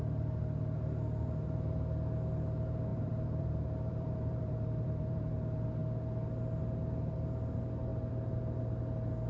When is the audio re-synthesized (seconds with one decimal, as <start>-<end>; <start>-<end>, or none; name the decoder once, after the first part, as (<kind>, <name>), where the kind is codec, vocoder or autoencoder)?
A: 2.9-5.3 (vocoder, BigVGAN v2); 7.9-8.6